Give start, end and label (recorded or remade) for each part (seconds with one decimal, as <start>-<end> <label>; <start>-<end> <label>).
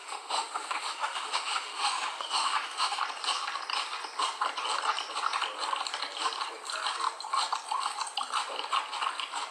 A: 0.0-3.0 remade; 3.0-9.5 recorded